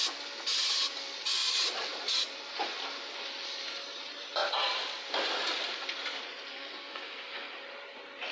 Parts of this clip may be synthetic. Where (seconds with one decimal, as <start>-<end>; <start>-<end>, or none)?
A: 6.5-7.5